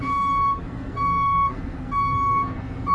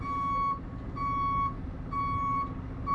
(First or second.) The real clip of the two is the second